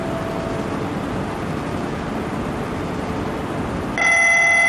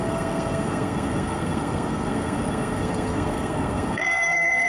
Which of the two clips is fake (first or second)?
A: second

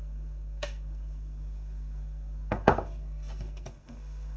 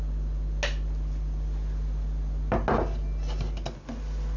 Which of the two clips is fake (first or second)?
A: first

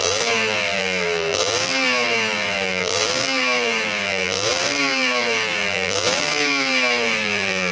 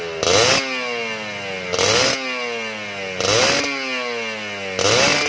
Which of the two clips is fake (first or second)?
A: first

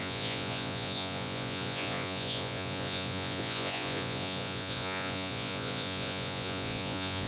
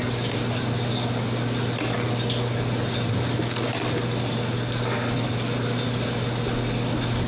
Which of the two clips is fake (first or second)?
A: first